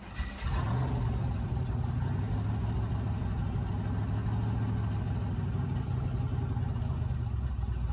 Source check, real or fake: real